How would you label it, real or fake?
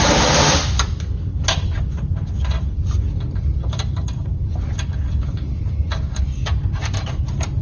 real